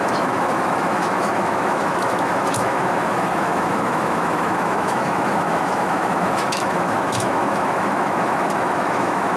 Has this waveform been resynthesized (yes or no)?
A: yes